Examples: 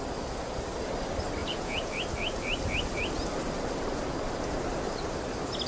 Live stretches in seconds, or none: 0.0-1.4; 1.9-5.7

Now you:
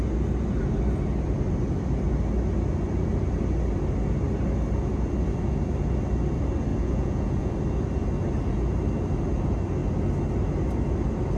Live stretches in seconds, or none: 0.0-6.7; 7.5-11.4